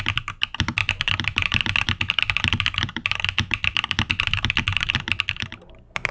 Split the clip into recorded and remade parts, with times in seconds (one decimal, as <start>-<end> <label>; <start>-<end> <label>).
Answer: 0.0-6.1 recorded